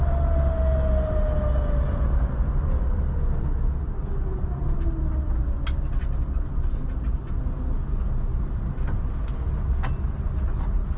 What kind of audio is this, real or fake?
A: real